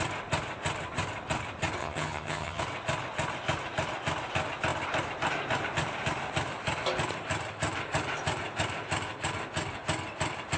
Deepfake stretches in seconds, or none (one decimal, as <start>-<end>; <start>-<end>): 1.8-2.6